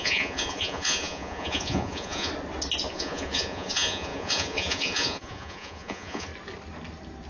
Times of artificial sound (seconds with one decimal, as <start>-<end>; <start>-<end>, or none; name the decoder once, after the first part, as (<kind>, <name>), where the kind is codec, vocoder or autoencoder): 0.0-2.3 (vocoder, Vocos); 2.9-6.3